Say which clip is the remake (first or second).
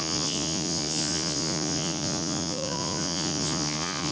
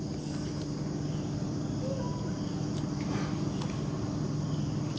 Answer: first